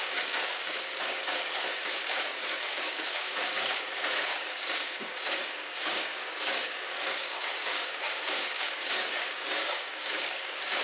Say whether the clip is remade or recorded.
remade